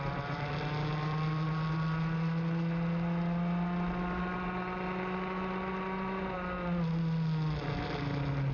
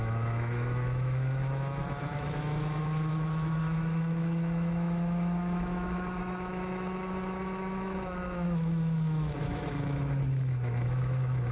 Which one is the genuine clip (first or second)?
first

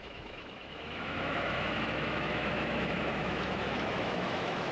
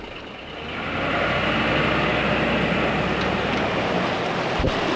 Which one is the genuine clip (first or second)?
second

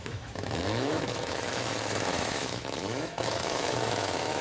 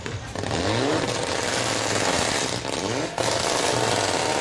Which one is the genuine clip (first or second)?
second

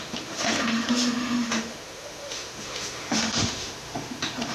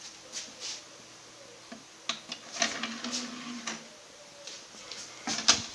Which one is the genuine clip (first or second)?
second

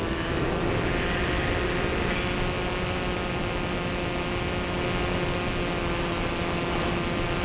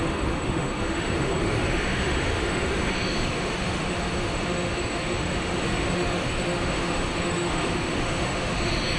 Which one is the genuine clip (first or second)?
first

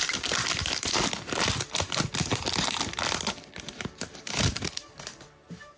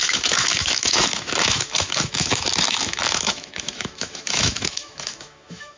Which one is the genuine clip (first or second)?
first